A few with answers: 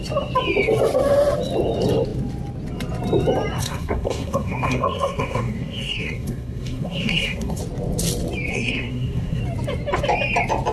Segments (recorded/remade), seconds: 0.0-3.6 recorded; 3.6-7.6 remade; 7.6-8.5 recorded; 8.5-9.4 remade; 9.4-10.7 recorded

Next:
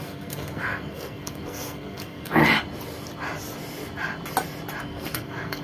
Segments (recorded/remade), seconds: 0.0-2.4 remade; 2.4-4.8 recorded; 4.8-5.6 remade

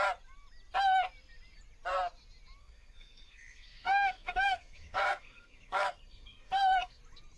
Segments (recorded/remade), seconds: 0.0-2.6 recorded; 2.6-7.0 remade; 7.0-7.4 recorded

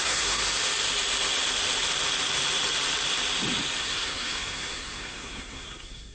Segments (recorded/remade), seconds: 0.0-0.4 remade; 0.4-3.8 recorded; 3.8-6.1 remade

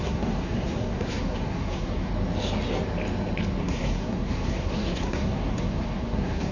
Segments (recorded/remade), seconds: 0.0-2.1 remade; 2.1-3.6 recorded; 3.6-6.5 remade

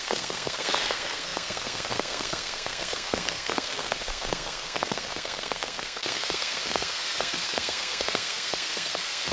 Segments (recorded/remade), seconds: 0.0-9.3 remade